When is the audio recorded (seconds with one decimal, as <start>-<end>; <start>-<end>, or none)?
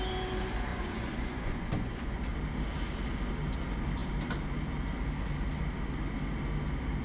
0.0-0.7; 2.2-7.0